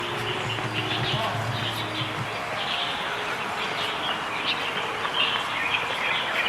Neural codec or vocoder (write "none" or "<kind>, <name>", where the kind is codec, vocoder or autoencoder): none